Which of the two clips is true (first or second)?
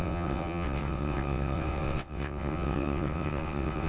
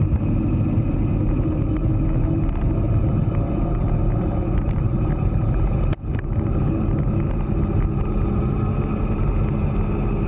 second